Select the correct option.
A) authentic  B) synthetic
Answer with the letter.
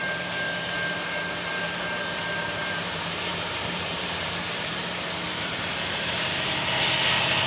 B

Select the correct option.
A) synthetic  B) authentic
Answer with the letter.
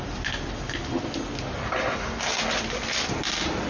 B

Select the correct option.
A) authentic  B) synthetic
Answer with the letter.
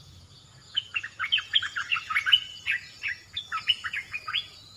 B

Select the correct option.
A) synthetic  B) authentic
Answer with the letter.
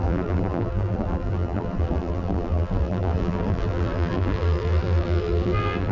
A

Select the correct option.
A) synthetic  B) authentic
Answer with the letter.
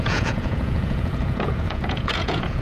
A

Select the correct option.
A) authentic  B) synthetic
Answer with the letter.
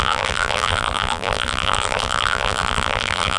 B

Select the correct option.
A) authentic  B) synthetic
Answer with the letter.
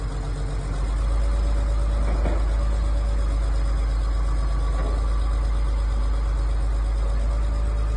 A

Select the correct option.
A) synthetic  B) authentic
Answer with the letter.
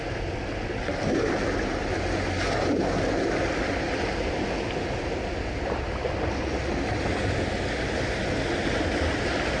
B